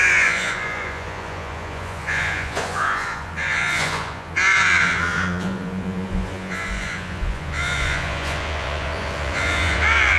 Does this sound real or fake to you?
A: fake